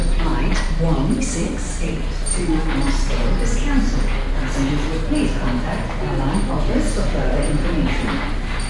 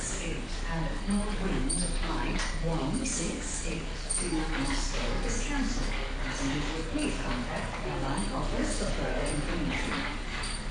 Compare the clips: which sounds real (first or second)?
first